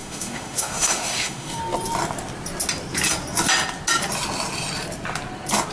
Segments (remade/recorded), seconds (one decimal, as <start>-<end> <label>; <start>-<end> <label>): 0.0-1.6 remade; 1.6-5.7 recorded